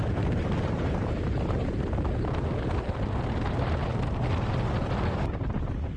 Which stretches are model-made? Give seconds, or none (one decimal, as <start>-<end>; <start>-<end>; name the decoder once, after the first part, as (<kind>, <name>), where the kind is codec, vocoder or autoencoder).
0.0-2.4 (vocoder, BigVGAN v2)